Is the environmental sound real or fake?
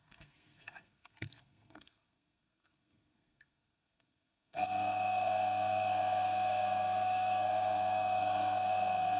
fake